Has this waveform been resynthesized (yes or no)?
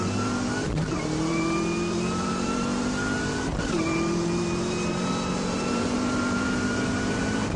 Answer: yes